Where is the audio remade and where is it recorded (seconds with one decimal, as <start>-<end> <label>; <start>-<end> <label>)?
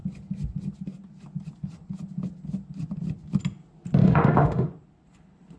0.0-4.0 recorded; 4.0-4.7 remade; 4.7-5.6 recorded